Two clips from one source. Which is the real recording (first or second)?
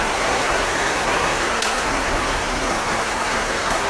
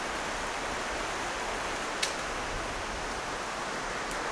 second